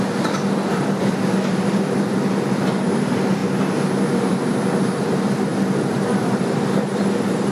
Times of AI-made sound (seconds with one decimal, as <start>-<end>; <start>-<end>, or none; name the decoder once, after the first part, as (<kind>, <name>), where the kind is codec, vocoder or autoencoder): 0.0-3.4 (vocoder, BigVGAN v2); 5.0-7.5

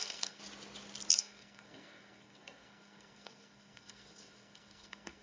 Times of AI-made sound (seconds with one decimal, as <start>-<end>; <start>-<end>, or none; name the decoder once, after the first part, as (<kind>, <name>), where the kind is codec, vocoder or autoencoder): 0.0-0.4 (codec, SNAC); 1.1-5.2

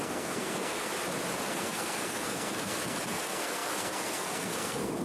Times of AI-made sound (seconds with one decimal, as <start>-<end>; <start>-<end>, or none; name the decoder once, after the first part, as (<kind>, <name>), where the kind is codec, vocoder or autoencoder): 0.0-0.9 (codec, SNAC); 1.5-5.0